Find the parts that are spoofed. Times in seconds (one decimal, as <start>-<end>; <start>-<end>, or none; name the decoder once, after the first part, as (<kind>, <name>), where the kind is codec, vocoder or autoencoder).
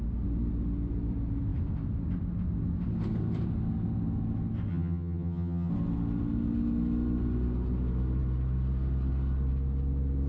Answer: 4.7-5.7 (vocoder, HiFi-GAN)